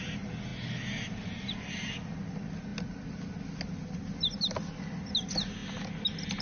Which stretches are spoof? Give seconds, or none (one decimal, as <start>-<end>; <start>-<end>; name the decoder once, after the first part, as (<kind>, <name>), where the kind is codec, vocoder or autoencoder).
none

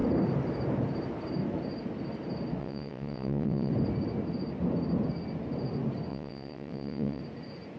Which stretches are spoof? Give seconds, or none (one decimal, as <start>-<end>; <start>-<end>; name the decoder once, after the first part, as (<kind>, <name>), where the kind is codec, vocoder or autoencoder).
2.6-3.7 (vocoder, WaveNeXt); 6.1-7.2

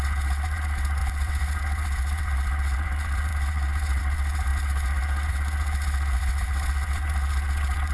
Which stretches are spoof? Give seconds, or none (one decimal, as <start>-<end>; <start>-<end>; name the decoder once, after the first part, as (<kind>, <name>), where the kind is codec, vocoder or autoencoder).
0.0-7.9 (vocoder, WaveNeXt)

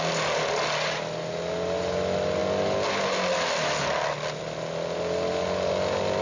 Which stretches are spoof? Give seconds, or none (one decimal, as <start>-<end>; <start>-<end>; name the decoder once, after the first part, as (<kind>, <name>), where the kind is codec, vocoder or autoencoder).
none